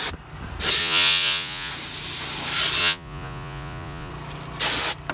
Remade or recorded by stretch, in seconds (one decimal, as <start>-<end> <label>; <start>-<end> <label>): 0.0-0.8 recorded; 0.8-1.7 remade; 1.7-2.8 recorded; 2.8-4.1 remade; 4.1-5.1 recorded